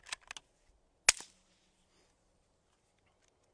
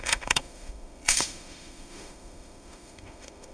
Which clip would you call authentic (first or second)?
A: first